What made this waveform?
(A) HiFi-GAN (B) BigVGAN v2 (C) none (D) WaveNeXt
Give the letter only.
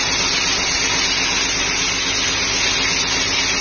C